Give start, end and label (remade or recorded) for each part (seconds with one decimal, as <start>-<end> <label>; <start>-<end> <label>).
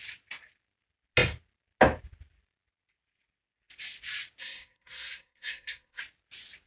0.0-4.4 recorded; 4.4-6.0 remade; 6.0-6.7 recorded